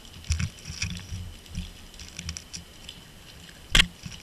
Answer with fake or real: real